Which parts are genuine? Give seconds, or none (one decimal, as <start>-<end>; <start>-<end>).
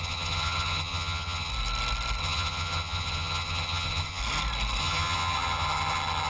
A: 1.5-2.2; 4.2-4.8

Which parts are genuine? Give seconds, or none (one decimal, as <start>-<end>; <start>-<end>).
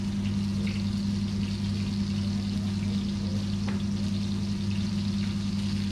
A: 0.0-5.9